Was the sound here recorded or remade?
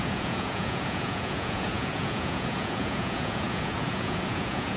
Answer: remade